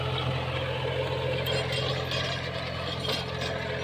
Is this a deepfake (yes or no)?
no